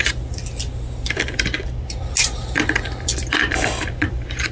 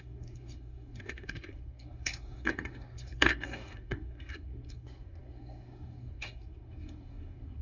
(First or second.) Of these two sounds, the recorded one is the first